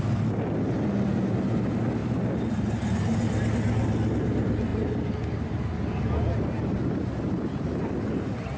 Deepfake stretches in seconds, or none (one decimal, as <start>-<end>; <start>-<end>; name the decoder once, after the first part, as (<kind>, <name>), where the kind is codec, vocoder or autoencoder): none

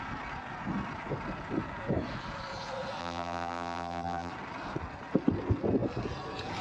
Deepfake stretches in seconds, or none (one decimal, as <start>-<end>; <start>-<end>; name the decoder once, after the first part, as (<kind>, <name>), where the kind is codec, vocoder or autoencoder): 3.0-4.3 (vocoder, BigVGAN v2)

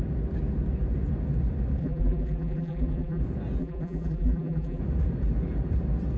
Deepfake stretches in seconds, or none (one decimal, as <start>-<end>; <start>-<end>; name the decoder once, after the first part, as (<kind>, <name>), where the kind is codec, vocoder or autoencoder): 1.8-3.2 (vocoder, BigVGAN v2); 3.6-4.8

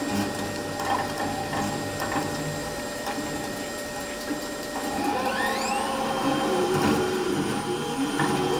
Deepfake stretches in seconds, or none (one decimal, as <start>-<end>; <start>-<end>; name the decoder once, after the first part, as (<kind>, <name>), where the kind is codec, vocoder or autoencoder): 2.6-7.3 (vocoder, BigVGAN v2)

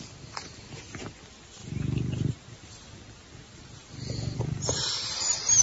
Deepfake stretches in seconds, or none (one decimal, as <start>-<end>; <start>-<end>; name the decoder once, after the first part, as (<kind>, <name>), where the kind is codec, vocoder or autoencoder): 3.8-5.0 (vocoder, BigVGAN v2)

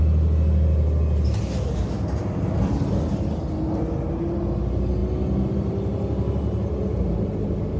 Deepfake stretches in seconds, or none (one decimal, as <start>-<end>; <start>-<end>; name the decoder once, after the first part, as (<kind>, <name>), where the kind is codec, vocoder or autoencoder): 1.8-2.9 (vocoder, BigVGAN v2)